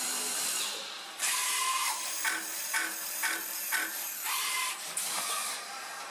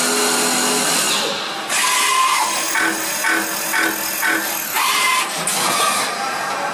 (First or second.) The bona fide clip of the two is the second